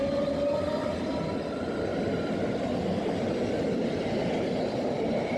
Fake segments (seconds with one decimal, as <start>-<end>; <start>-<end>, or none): none